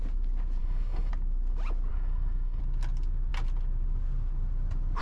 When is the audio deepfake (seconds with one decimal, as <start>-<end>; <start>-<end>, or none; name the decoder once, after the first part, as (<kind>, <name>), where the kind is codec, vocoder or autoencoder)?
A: 0.6-1.1 (codec, SNAC); 1.9-2.6